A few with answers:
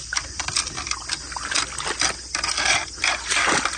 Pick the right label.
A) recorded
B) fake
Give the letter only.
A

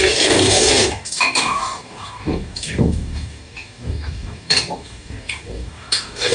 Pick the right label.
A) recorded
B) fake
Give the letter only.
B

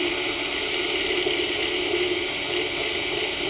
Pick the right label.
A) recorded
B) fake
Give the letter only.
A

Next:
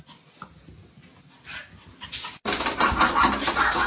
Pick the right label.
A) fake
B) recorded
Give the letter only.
B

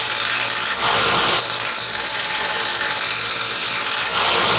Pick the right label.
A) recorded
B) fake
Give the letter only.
A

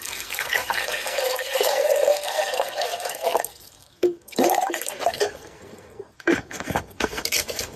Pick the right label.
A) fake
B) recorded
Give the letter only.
A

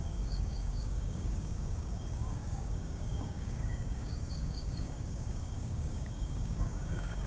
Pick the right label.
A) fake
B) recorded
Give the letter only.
A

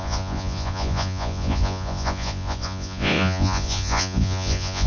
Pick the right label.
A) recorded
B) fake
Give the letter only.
B